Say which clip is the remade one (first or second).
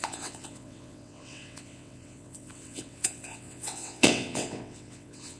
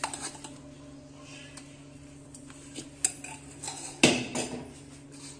first